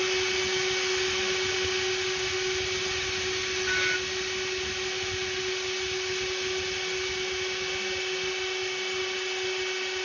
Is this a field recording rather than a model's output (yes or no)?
yes